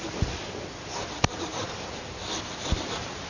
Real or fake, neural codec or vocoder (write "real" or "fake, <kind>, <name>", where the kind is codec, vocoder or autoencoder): fake, vocoder, BigVGAN v2